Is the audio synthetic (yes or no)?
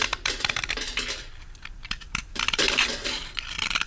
yes